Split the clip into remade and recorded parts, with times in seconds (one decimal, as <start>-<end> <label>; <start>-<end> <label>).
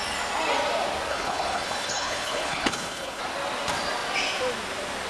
0.0-1.1 recorded; 1.1-3.2 remade; 3.2-5.1 recorded